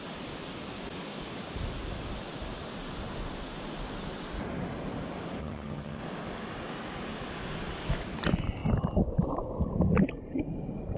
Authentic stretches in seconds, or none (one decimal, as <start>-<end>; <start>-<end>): 0.0-5.4; 6.0-11.0